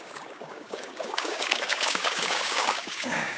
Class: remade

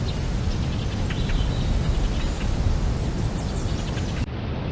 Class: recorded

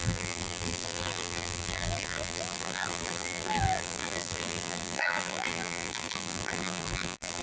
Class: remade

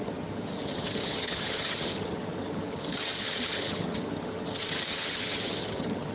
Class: remade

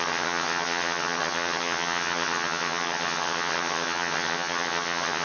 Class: remade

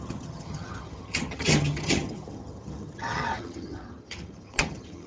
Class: remade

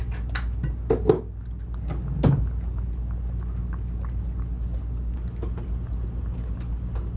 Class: recorded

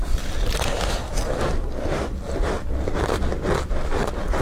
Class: recorded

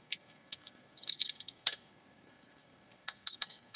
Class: remade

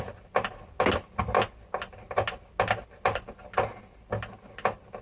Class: recorded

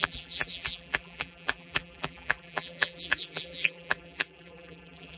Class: remade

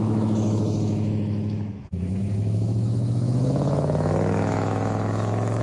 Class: remade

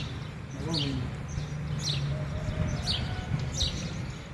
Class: recorded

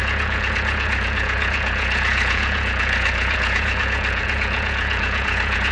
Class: remade